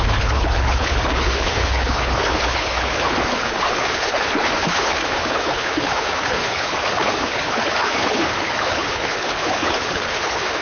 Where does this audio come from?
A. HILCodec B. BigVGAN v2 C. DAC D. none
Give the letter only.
A